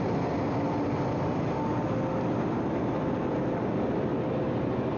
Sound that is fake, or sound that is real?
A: real